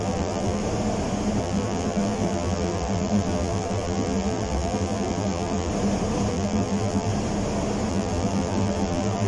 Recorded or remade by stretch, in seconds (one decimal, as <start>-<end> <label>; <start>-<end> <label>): 0.0-0.6 remade; 0.6-1.4 recorded; 1.4-5.7 remade; 5.7-6.3 recorded; 6.3-7.1 remade; 7.1-7.9 recorded; 7.9-9.3 remade